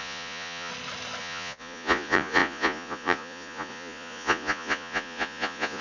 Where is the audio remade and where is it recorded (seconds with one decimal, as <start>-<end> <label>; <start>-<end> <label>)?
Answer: 0.0-0.7 remade; 0.7-1.2 recorded; 1.2-5.8 remade